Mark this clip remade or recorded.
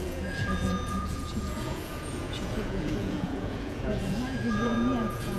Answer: remade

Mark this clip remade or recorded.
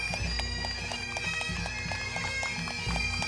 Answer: recorded